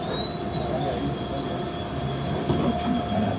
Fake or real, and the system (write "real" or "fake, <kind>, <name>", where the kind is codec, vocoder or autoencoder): real